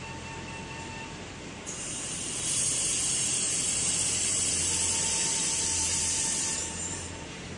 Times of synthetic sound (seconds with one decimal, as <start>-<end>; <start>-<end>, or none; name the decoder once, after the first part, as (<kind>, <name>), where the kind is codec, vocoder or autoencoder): 1.8-7.6 (vocoder, BigVGAN v2)